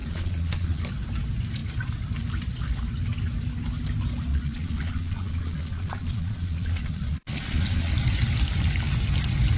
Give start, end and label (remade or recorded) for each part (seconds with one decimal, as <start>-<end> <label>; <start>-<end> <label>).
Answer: 0.0-0.8 remade; 0.8-4.3 recorded; 4.3-7.9 remade; 7.9-9.6 recorded